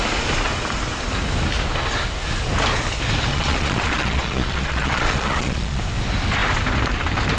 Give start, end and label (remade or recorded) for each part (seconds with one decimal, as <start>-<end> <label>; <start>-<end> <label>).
0.0-3.3 recorded; 3.3-5.8 remade; 5.8-7.4 recorded